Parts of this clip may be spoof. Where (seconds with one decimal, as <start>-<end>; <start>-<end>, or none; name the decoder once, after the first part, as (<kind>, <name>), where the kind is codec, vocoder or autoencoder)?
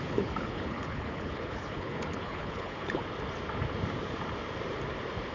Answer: 0.0-3.0 (codec, HILCodec)